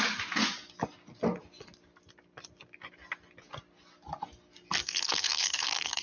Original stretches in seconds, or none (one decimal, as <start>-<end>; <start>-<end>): 0.0-4.8